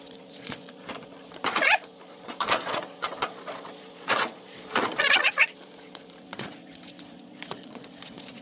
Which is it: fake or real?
fake